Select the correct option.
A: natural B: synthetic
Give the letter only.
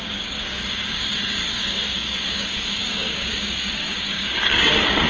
B